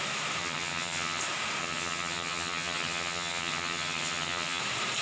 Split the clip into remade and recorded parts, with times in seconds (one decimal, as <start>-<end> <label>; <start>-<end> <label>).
0.0-0.4 recorded; 0.4-1.2 remade; 1.2-1.6 recorded; 1.6-4.6 remade; 4.6-5.0 recorded